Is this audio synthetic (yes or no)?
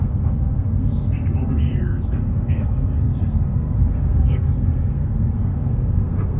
yes